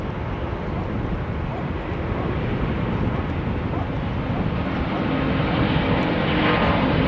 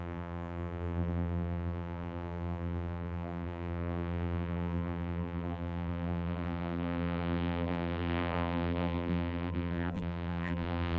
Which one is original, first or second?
first